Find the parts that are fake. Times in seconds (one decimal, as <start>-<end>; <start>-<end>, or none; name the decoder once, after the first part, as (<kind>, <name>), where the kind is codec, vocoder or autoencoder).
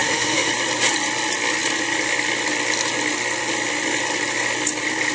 0.0-0.5 (autoencoder, DAC-VAE)